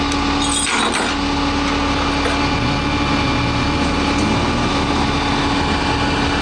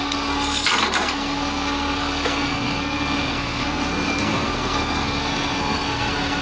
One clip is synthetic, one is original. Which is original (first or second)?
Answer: first